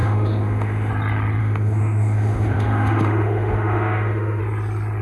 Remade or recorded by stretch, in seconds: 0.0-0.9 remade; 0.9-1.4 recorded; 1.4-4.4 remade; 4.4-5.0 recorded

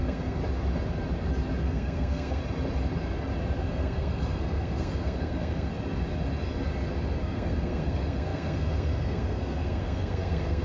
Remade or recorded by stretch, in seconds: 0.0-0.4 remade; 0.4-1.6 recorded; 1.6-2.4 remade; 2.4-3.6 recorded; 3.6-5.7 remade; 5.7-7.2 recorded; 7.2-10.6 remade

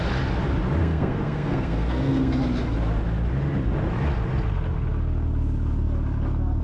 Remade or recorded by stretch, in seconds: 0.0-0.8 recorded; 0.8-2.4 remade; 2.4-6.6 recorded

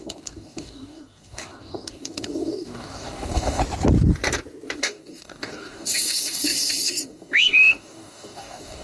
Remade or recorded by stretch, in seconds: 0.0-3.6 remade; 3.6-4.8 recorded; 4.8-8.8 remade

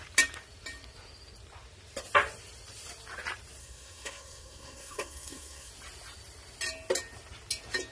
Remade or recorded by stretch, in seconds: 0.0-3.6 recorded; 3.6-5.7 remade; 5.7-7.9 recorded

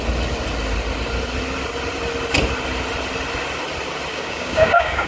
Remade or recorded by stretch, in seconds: 0.0-4.1 recorded; 4.1-5.1 remade